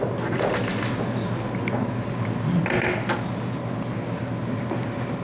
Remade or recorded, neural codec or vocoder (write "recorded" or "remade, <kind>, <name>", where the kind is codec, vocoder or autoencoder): recorded